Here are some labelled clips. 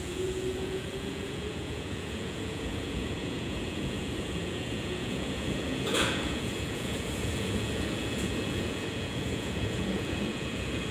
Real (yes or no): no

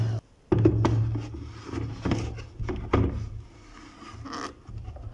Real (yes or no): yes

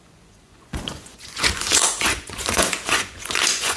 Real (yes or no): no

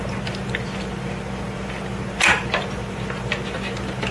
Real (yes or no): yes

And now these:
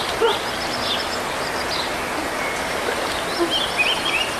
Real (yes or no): yes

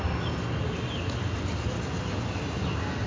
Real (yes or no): yes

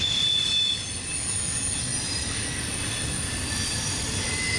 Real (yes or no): yes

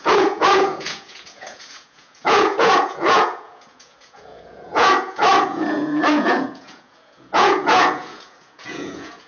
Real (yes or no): no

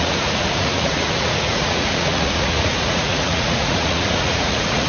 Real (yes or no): no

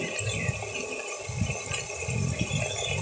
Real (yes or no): yes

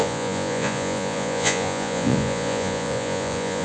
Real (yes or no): no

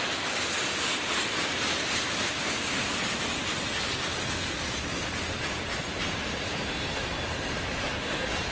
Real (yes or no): yes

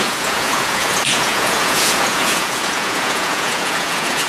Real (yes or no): no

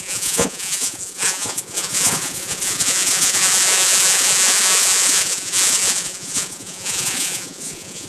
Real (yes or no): no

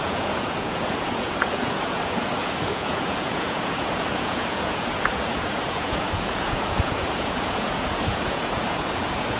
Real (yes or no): no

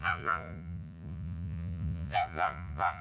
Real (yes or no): no